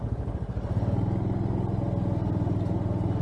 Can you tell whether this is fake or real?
real